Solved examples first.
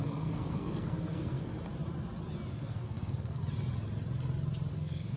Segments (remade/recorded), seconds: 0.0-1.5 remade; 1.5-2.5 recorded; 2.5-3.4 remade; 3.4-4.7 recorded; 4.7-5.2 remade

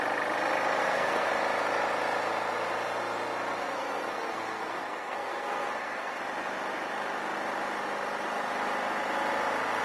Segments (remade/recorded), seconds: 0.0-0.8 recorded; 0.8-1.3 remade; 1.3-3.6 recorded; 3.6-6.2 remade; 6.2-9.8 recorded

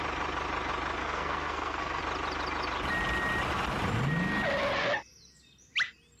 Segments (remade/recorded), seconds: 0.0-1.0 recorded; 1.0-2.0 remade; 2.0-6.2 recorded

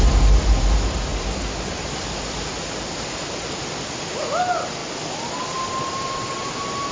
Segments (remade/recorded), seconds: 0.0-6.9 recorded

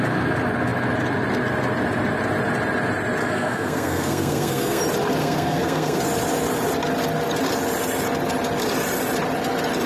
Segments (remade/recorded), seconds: 0.0-3.2 recorded; 3.2-4.8 remade; 4.8-5.2 recorded; 5.2-6.0 remade; 6.0-9.9 recorded